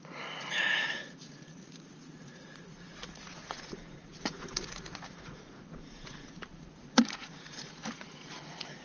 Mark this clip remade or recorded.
remade